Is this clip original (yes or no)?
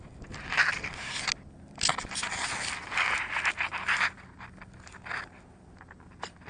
yes